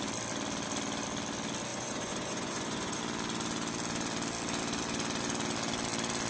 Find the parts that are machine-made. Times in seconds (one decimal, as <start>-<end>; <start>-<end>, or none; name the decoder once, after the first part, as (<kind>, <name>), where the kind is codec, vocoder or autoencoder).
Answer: 1.7-3.0 (vocoder, Vocos)